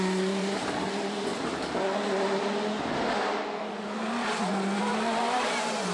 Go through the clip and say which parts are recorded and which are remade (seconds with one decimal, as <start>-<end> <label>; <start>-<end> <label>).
0.0-1.3 remade; 1.3-4.8 recorded; 4.8-5.9 remade